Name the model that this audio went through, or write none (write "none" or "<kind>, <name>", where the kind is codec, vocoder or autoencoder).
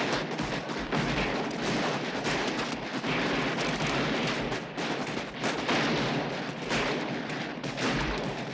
none